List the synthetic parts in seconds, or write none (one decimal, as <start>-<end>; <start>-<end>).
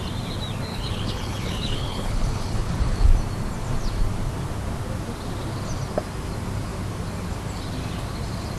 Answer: 0.7-3.1